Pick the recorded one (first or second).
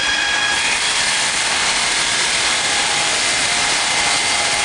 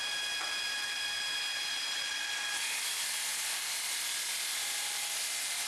second